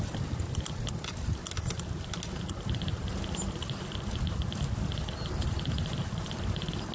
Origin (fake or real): real